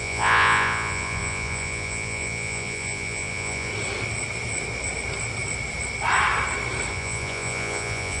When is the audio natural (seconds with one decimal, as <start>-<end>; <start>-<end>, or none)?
3.7-6.9